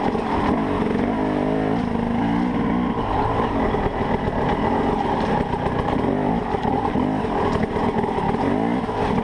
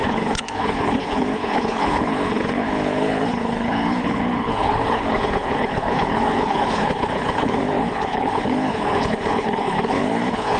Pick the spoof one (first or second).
second